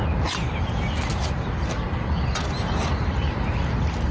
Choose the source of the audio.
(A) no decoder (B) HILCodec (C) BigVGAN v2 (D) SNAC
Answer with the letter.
A